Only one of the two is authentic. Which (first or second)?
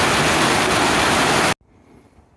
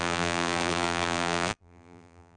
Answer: first